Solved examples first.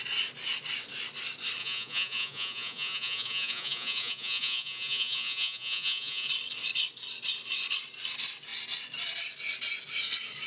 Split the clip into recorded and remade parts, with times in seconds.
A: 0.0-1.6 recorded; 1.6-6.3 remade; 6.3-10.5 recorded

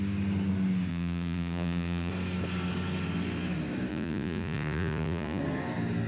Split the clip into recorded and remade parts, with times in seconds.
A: 0.0-0.9 recorded; 0.9-2.1 remade; 2.1-3.9 recorded; 3.9-5.4 remade; 5.4-6.1 recorded

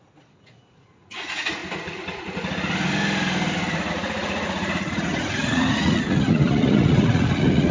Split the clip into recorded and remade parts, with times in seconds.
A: 0.0-1.6 remade; 1.6-3.9 recorded; 3.9-7.7 remade

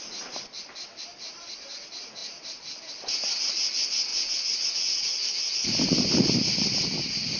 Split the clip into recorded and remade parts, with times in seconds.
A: 0.0-4.1 recorded; 4.1-5.3 remade; 5.3-7.4 recorded

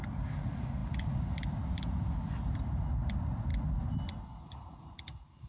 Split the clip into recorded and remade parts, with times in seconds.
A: 0.0-5.5 recorded

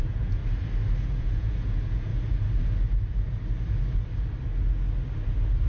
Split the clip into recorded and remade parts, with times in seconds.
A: 0.0-0.4 remade; 0.4-1.0 recorded; 1.0-2.1 remade; 2.1-5.7 recorded

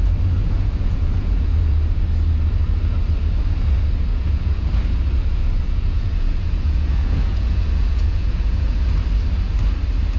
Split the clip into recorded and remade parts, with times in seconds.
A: 0.0-0.4 recorded; 0.4-2.0 remade; 2.0-4.1 recorded; 4.1-4.7 remade; 4.7-5.2 recorded; 5.2-8.7 remade; 8.7-10.2 recorded

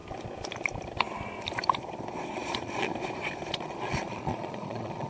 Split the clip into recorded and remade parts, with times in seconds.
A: 0.0-2.3 recorded; 2.3-2.9 remade; 2.9-3.5 recorded; 3.5-5.1 remade